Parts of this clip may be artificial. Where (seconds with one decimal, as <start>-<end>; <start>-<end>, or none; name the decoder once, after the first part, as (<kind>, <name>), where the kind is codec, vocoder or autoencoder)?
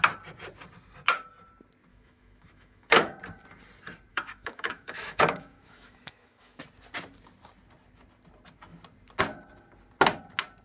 1.9-3.2 (autoencoder, DAC-VAE); 4.1-6.6